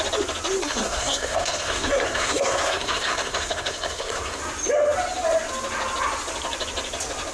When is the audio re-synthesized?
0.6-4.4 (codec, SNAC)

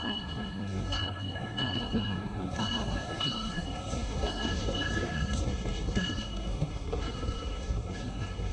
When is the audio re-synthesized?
0.0-8.5 (codec, SNAC)

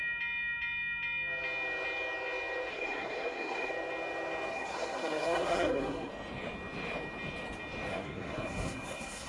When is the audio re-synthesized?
2.7-3.7 (codec, SNAC); 4.5-6.1; 7.9-9.3

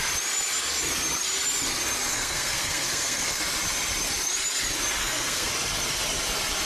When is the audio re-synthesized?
2.1-3.4 (codec, SNAC); 5.0-5.5

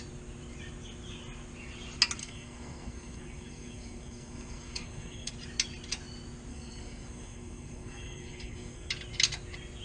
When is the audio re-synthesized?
2.2-5.3 (codec, SNAC); 6.5-8.9

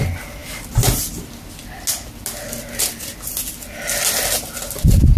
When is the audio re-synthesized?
none

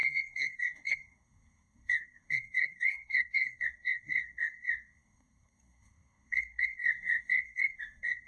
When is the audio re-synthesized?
0.0-8.3 (codec, SNAC)